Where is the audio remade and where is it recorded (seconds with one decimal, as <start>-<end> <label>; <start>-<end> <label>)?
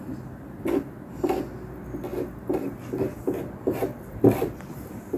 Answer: 0.0-5.2 recorded